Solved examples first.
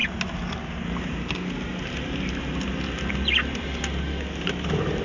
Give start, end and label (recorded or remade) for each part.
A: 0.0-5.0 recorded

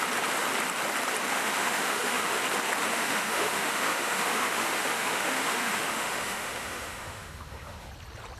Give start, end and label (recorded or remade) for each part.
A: 0.0-1.3 recorded; 1.3-2.4 remade; 2.4-2.9 recorded; 2.9-7.9 remade; 7.9-8.4 recorded

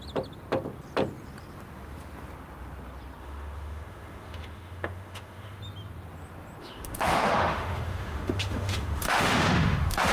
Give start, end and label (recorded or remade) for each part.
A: 0.0-3.2 recorded; 3.2-5.6 remade; 5.6-6.6 recorded; 6.6-10.1 remade

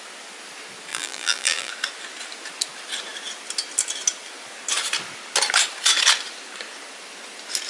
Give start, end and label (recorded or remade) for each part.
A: 0.0-0.9 recorded; 0.9-1.7 remade; 1.7-7.7 recorded

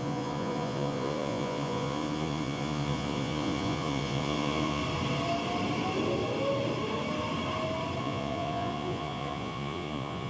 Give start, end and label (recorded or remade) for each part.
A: 0.0-4.8 remade; 4.8-8.0 recorded; 8.0-10.3 remade

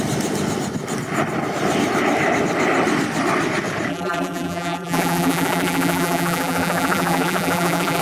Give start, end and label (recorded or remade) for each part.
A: 0.0-3.9 recorded; 3.9-8.0 remade

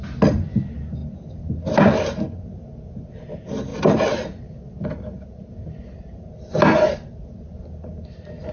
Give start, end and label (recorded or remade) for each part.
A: 0.0-8.5 recorded

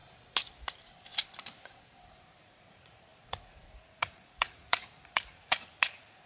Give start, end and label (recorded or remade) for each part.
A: 0.0-2.1 recorded; 2.1-6.3 remade